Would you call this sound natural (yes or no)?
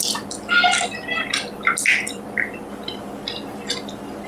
yes